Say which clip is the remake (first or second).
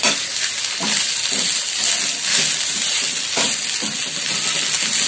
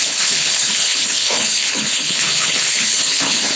second